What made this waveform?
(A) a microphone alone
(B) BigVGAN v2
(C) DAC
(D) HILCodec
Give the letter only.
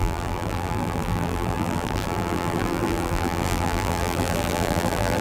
B